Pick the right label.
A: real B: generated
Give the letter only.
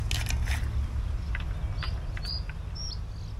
A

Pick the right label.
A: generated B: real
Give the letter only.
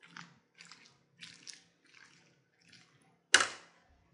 B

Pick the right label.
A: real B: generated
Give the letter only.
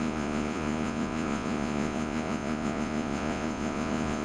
B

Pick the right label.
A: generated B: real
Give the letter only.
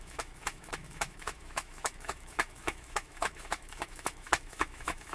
A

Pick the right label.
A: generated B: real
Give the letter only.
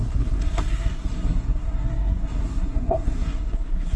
A